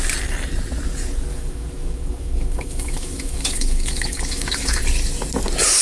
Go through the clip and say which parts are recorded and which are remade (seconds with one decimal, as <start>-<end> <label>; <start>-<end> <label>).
0.0-1.3 recorded; 1.3-4.8 remade; 4.8-5.8 recorded